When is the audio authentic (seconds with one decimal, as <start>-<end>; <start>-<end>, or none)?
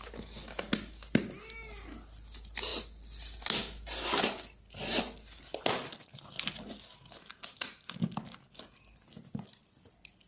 0.0-10.3